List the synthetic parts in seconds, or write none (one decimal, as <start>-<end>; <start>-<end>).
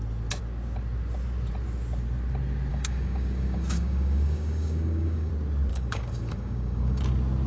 2.7-5.3; 5.7-7.0